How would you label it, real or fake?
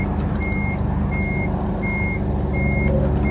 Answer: real